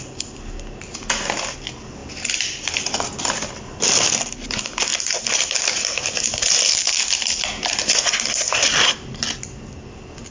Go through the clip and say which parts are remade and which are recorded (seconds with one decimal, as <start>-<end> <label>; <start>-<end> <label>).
0.0-10.3 recorded